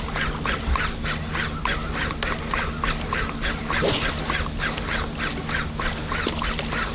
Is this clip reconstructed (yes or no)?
no